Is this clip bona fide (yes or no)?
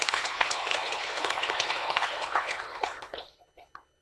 no